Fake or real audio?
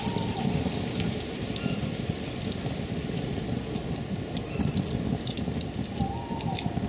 real